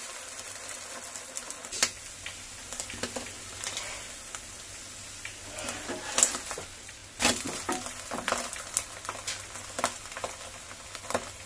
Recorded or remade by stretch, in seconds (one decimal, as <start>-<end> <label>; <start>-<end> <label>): 0.0-11.5 recorded

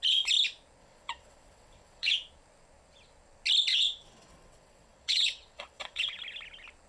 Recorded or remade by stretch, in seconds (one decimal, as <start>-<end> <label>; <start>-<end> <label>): 0.0-0.8 recorded; 0.8-2.1 remade; 2.1-3.7 recorded; 3.7-6.2 remade; 6.2-6.9 recorded

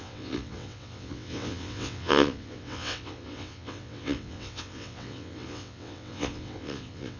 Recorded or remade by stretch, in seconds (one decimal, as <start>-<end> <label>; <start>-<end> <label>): 0.0-7.2 remade